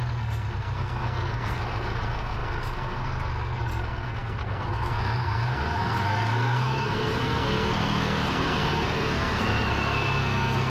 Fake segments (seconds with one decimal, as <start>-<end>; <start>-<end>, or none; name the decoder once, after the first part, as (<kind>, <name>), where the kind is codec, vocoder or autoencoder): 0.0-10.7 (codec, SNAC)